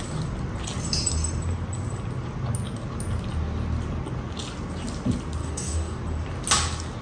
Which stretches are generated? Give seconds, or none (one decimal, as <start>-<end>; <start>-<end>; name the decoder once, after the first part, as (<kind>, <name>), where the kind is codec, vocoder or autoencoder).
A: 5.4-6.0 (codec, DAC)